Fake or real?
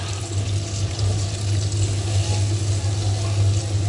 real